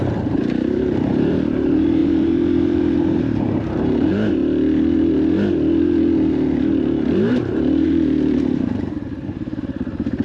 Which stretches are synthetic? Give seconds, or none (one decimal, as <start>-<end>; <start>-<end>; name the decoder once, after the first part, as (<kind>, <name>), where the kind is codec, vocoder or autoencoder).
0.0-4.4 (vocoder, BigVGAN v2); 7.3-10.2